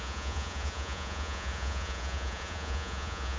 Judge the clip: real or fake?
fake